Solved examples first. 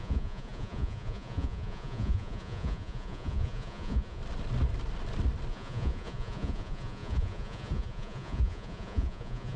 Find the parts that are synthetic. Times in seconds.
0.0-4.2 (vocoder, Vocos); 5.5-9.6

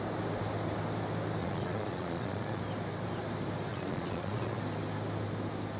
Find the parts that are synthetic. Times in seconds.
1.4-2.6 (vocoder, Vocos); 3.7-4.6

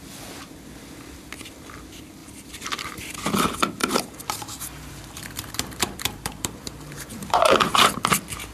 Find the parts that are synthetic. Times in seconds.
2.2-3.1 (vocoder, BigVGAN v2); 3.8-8.0

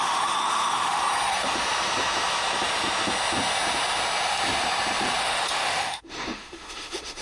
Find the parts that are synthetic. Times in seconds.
0.0-1.0 (autoencoder, DAC-VAE); 5.2-7.2